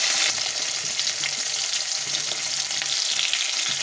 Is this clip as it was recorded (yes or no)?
yes